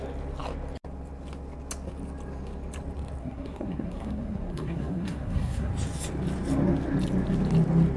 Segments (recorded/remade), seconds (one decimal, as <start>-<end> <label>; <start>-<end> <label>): 0.0-3.2 recorded; 3.2-5.7 remade; 5.7-8.0 recorded